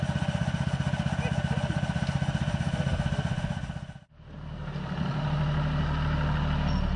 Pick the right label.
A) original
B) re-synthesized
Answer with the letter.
A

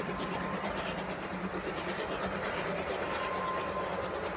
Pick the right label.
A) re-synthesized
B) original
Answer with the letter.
B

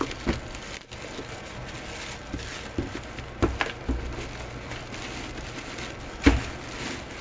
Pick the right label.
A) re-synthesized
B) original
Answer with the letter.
B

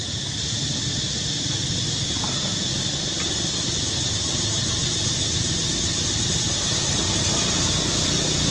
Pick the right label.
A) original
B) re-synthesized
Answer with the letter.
A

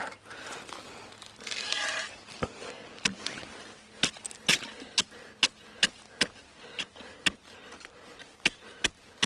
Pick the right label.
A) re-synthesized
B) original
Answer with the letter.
B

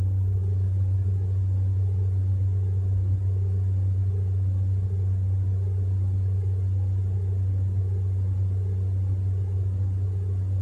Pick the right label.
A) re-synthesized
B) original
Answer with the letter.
B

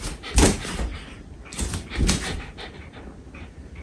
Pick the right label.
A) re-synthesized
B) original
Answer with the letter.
B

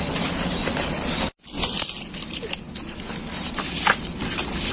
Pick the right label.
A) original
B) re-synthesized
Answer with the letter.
A